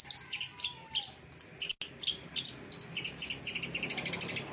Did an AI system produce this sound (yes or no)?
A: no